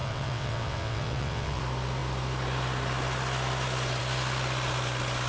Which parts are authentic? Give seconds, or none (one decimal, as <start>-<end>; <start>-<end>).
1.6-5.3